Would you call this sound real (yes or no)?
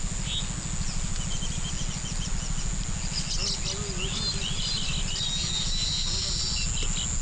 yes